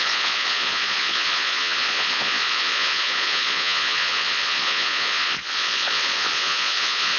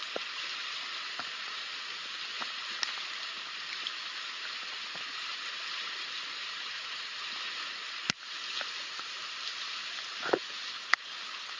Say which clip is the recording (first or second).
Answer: second